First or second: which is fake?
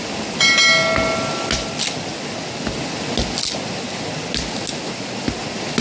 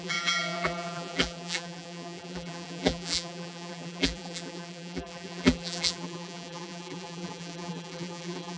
second